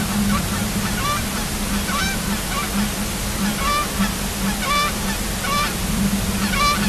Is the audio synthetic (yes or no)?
no